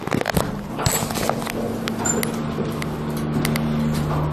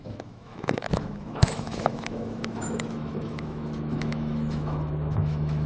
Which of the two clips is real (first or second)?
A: first